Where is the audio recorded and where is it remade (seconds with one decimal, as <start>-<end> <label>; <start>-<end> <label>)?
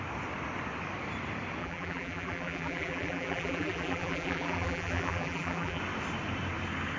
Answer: 0.0-1.6 recorded; 1.6-5.8 remade; 5.8-7.0 recorded